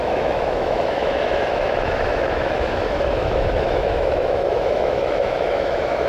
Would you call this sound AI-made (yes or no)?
yes